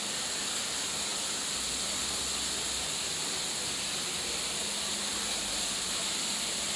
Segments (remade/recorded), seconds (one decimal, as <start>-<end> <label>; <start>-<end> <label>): 0.0-6.8 recorded